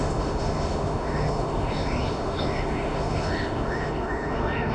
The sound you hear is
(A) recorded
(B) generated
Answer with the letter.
B